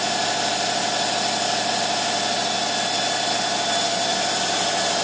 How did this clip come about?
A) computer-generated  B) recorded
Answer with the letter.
B